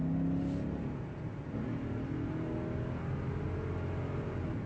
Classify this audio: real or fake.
real